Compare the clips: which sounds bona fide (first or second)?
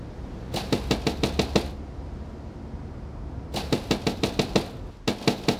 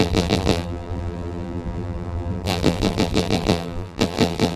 first